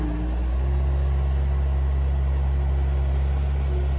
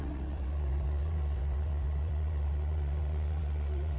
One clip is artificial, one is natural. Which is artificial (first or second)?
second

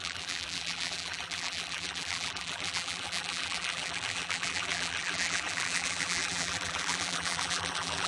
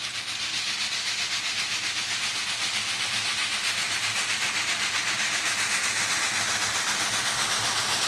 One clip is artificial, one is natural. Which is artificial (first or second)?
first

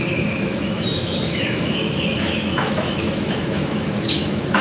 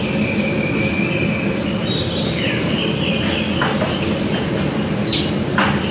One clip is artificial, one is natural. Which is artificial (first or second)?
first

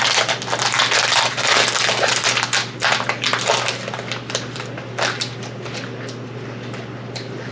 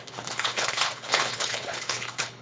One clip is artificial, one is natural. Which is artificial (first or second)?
second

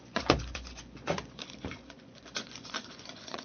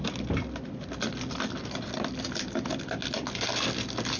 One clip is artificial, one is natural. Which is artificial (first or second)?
first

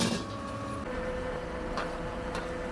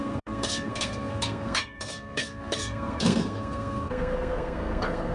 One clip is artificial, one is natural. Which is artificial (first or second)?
second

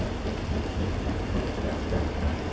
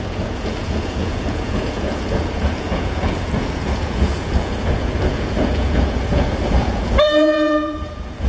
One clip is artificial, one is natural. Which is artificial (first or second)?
second